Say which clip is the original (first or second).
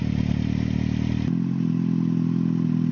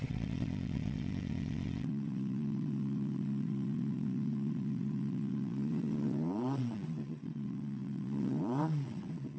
first